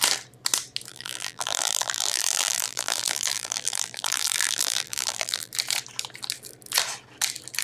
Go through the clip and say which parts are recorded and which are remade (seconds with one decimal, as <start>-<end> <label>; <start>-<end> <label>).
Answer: 0.0-0.9 recorded; 0.9-5.5 remade; 5.5-7.6 recorded